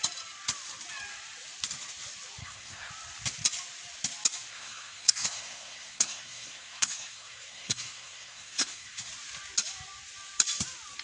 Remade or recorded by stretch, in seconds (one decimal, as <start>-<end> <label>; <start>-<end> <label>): 0.0-2.4 recorded; 2.4-2.9 remade; 2.9-4.5 recorded; 4.5-9.1 remade; 9.1-11.0 recorded